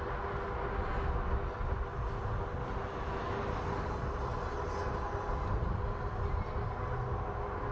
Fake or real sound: real